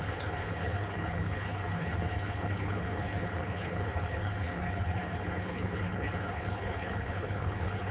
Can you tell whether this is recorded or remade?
remade